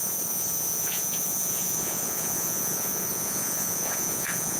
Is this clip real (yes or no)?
no